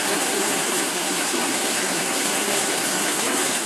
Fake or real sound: fake